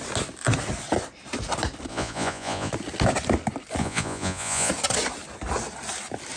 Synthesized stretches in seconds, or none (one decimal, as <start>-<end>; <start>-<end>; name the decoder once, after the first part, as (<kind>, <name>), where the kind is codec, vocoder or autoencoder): 1.9-2.7 (vocoder, Vocos); 3.8-4.7